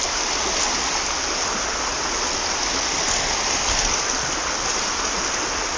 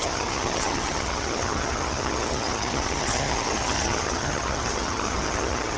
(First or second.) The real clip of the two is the first